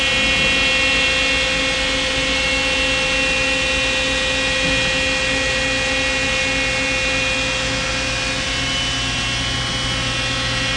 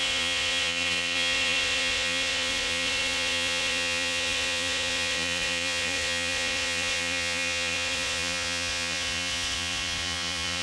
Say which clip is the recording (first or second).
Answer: first